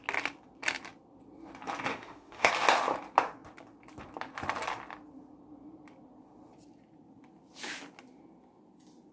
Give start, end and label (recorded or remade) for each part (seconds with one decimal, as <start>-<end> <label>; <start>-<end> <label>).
0.0-1.9 recorded; 1.9-2.5 remade; 2.5-9.1 recorded